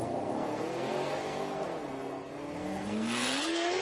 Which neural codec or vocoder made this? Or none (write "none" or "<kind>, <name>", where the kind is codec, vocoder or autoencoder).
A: codec, SNAC